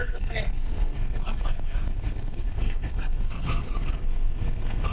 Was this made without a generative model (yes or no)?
no